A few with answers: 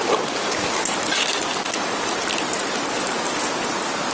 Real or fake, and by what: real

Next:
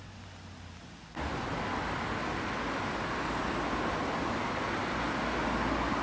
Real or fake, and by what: real